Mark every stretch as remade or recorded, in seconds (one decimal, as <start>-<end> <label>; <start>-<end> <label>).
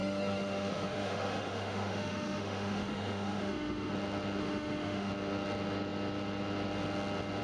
0.0-3.9 remade; 3.9-4.4 recorded; 4.4-5.1 remade; 5.1-7.4 recorded